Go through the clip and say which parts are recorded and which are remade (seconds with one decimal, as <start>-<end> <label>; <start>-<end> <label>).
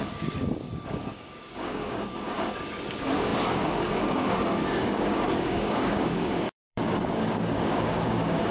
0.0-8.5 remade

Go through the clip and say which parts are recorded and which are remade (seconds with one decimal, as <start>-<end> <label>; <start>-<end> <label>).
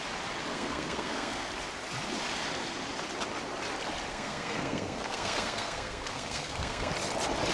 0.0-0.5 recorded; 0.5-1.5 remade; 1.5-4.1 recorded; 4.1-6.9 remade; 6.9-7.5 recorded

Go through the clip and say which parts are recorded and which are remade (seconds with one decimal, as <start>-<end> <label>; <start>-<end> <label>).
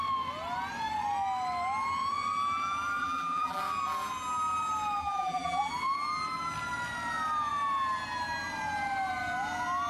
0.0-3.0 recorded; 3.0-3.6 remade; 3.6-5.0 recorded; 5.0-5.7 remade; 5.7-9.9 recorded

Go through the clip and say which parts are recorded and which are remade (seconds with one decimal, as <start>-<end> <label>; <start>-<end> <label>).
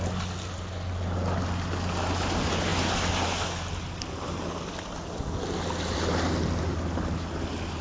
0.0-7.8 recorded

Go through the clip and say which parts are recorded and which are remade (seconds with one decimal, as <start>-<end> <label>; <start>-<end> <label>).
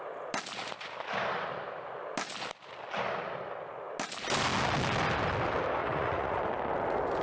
0.0-5.8 recorded; 5.8-6.4 remade; 6.4-7.2 recorded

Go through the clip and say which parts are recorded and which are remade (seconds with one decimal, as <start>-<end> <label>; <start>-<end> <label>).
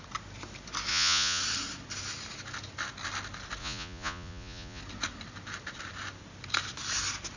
0.0-0.9 recorded; 0.9-1.4 remade; 1.4-3.6 recorded; 3.6-4.8 remade; 4.8-7.4 recorded